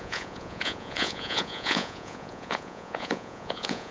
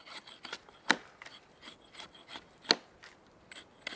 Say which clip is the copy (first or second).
first